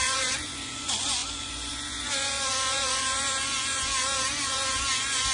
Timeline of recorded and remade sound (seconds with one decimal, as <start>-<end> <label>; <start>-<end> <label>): 0.0-5.3 remade